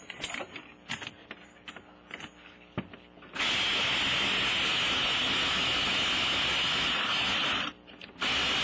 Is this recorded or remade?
recorded